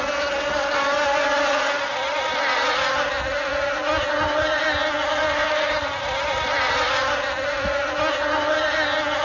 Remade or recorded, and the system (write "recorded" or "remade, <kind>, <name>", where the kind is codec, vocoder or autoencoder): recorded